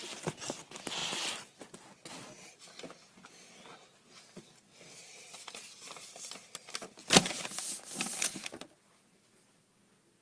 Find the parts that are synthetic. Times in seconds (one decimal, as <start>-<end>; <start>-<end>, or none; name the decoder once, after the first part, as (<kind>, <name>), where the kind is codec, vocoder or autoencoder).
none

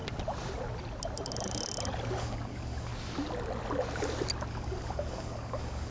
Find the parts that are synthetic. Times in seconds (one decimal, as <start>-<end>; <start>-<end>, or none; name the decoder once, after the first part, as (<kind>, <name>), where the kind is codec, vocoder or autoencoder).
2.2-2.9 (codec, DAC); 4.5-5.9

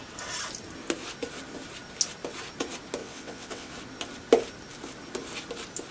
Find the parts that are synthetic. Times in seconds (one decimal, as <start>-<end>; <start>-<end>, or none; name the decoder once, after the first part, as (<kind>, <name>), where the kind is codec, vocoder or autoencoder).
3.0-3.7 (vocoder, WaveNeXt)

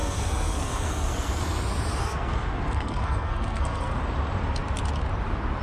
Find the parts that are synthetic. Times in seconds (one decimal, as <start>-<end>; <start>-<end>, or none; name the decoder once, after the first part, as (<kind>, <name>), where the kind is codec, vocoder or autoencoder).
0.0-1.4 (codec, SNAC); 2.0-4.0